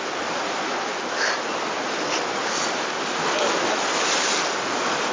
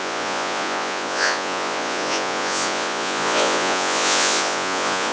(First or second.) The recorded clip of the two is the first